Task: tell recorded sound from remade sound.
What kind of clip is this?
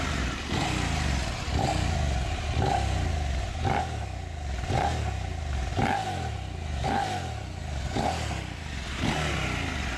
recorded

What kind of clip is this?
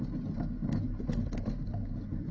recorded